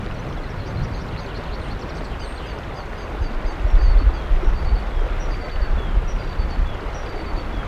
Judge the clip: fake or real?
real